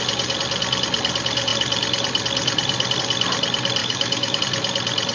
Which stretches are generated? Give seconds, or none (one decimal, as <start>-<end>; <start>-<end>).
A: 3.8-4.4